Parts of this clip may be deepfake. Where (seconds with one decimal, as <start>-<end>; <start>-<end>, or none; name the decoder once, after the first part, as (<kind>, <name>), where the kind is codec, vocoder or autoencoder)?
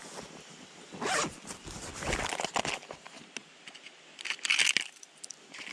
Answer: none